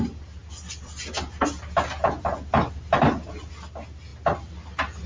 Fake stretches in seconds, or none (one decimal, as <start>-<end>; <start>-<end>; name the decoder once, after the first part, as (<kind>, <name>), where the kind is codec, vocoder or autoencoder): none